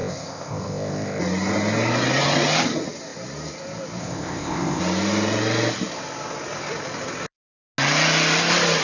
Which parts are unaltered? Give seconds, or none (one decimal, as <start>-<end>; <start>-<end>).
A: 1.2-4.0; 4.8-8.8